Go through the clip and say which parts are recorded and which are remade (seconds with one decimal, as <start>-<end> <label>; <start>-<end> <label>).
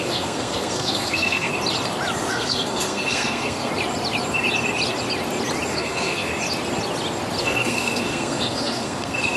0.0-1.5 remade; 1.5-2.3 recorded; 2.3-3.7 remade; 3.7-5.7 recorded; 5.7-6.3 remade; 6.3-7.4 recorded; 7.4-9.4 remade